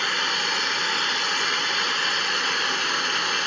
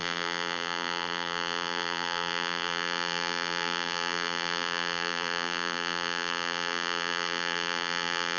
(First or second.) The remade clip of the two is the second